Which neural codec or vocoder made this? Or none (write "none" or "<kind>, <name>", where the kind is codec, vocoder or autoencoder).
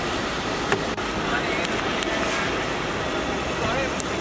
none